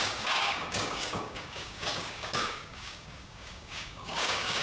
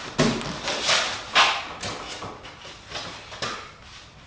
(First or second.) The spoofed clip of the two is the first